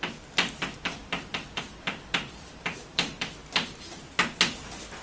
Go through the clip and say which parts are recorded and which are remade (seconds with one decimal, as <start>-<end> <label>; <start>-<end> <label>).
0.0-3.4 remade; 3.4-4.6 recorded; 4.6-5.0 remade